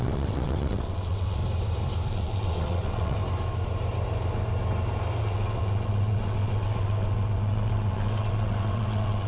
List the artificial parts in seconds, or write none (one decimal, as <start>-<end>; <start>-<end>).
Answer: 0.0-1.4; 2.1-3.2; 5.2-9.3